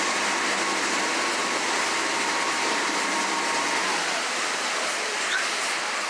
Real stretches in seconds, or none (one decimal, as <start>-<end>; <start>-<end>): 0.0-6.1